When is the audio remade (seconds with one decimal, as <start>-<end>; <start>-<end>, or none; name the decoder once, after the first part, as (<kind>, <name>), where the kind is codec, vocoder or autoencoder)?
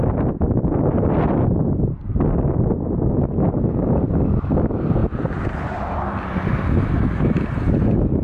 none